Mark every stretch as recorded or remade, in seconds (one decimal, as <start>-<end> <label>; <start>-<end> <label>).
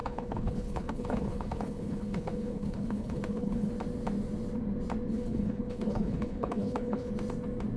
0.0-3.7 remade; 3.7-5.1 recorded; 5.1-7.1 remade; 7.1-7.8 recorded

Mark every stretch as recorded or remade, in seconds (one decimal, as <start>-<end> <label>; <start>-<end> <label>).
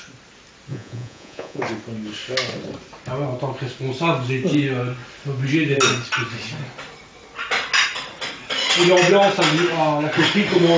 0.0-0.7 recorded; 0.7-1.6 remade; 1.6-10.8 recorded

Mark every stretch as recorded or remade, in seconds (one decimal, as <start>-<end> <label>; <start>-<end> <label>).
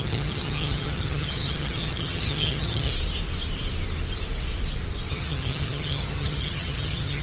0.0-2.9 remade; 2.9-5.1 recorded; 5.1-7.2 remade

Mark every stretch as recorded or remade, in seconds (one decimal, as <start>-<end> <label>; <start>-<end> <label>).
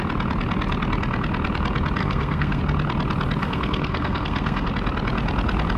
0.0-2.0 recorded; 2.0-2.6 remade; 2.6-3.4 recorded; 3.4-4.7 remade; 4.7-5.8 recorded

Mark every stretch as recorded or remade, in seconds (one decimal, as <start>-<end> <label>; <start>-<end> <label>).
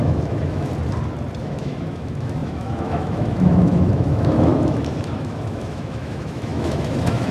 0.0-0.7 remade; 0.7-1.4 recorded; 1.4-7.3 remade